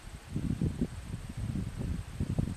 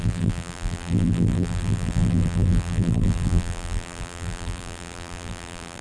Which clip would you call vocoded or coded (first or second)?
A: second